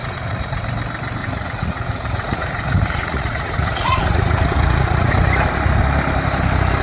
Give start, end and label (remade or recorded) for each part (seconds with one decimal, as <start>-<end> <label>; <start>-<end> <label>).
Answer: 0.0-0.6 remade; 0.6-1.2 recorded; 1.2-5.1 remade; 5.1-6.8 recorded